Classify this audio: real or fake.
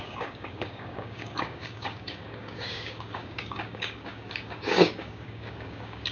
fake